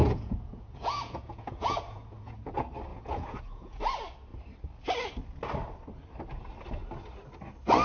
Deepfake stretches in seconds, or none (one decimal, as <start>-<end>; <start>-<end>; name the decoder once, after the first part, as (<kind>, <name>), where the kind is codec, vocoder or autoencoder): 0.0-2.5 (vocoder, Vocos); 2.9-3.8